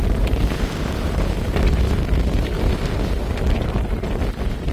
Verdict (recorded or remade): recorded